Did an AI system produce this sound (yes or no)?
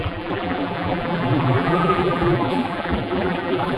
yes